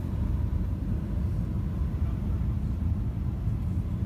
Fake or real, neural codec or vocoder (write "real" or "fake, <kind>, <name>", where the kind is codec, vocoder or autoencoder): real